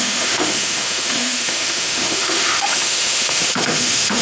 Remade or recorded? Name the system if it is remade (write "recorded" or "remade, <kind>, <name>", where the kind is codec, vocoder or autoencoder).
remade, autoencoder, DAC-VAE